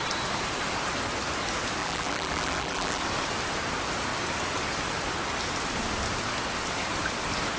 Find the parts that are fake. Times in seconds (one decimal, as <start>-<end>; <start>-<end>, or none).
1.8-3.0